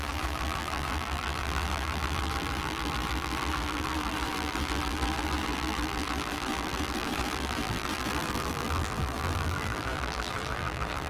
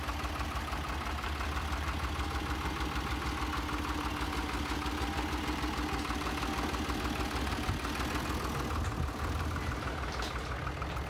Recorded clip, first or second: second